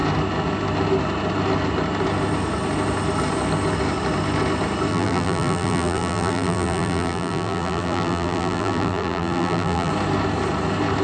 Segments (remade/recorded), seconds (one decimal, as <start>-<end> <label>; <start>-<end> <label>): 0.0-4.9 recorded; 4.9-9.9 remade; 9.9-11.0 recorded